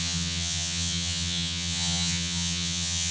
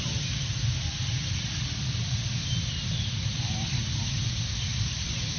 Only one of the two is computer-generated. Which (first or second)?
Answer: first